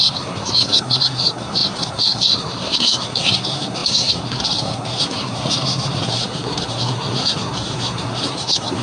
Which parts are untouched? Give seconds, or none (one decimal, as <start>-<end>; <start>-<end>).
none